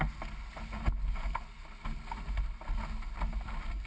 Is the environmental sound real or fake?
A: real